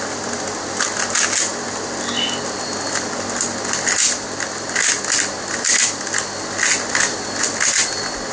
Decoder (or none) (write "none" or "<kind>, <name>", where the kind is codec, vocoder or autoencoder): none